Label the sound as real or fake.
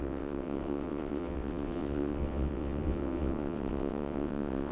fake